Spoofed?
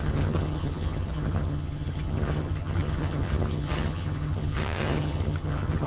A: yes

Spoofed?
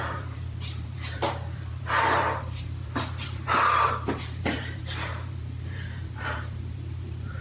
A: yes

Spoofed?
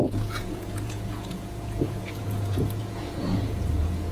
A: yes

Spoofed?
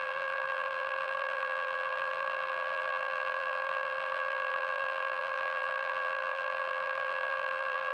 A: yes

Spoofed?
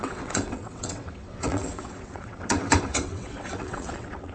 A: yes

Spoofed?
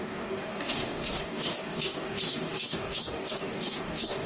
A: yes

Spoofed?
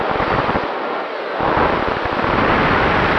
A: no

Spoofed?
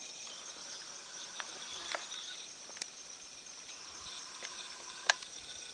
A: yes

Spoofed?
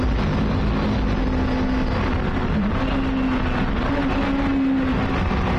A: no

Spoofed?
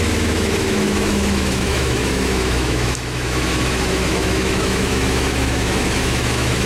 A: yes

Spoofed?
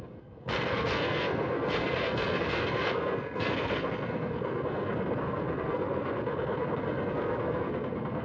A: yes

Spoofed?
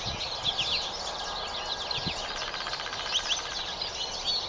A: no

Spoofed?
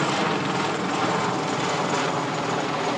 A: no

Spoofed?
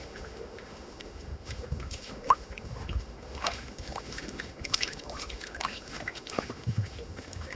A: yes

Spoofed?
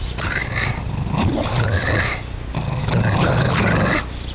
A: no